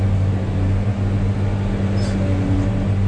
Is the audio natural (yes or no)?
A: yes